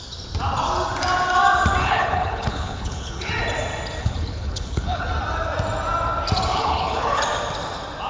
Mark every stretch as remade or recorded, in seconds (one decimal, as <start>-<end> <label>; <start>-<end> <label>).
0.0-1.8 recorded; 1.8-3.3 remade; 3.3-4.0 recorded; 4.0-5.1 remade; 5.1-6.5 recorded; 6.5-7.2 remade; 7.2-8.1 recorded